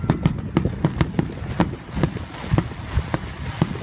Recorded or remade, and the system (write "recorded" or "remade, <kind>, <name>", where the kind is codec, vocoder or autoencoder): recorded